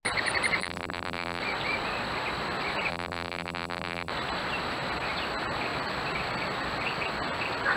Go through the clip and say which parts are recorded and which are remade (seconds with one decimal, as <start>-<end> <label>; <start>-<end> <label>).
0.0-0.6 recorded; 0.6-1.4 remade; 1.4-2.9 recorded; 2.9-4.1 remade; 4.1-7.8 recorded